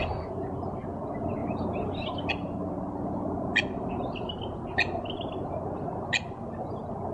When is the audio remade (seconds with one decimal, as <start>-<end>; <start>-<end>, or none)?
none